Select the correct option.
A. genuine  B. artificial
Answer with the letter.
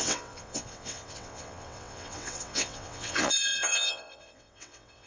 B